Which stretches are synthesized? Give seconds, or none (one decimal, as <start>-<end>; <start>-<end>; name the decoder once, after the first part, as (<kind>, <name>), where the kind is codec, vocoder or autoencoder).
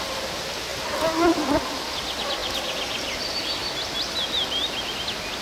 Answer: 2.4-3.2 (vocoder, BigVGAN v2)